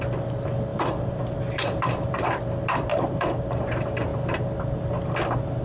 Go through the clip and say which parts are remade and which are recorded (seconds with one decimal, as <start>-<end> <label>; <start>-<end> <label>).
0.0-0.7 recorded; 0.7-2.4 remade; 2.4-2.9 recorded; 2.9-3.4 remade; 3.4-5.6 recorded